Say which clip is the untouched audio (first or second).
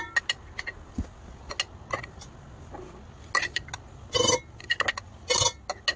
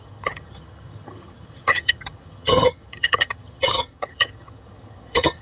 first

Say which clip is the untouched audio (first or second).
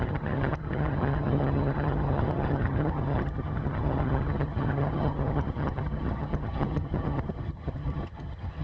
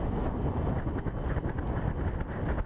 second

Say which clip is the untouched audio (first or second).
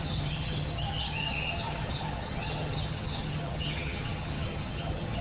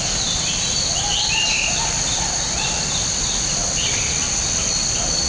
second